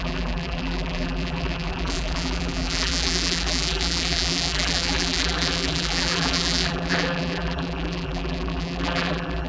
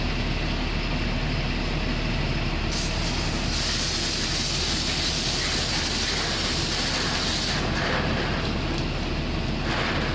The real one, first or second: second